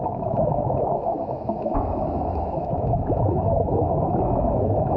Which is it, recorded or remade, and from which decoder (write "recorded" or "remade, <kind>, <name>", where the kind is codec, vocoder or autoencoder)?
remade, autoencoder, DAC-VAE